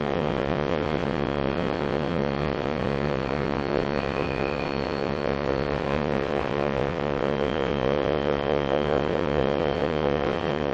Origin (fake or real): fake